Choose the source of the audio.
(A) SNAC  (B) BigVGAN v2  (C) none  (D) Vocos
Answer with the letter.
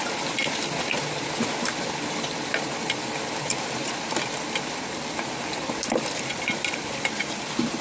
C